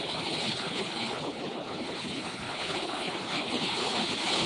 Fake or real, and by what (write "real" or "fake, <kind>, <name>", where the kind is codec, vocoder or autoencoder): fake, codec, HILCodec